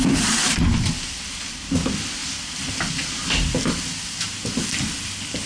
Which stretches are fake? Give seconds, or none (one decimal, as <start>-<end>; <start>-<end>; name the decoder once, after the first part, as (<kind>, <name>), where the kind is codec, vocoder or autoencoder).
none